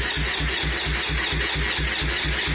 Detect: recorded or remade recorded